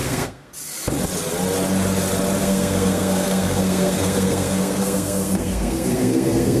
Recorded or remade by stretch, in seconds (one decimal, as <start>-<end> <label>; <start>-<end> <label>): 0.0-0.5 remade; 0.5-2.4 recorded; 2.4-6.6 remade